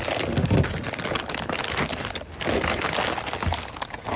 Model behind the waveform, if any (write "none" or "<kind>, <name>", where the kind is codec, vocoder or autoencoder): none